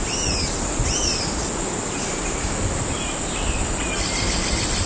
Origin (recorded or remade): recorded